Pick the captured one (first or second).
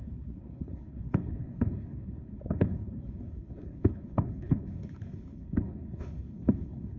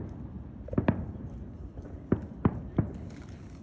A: second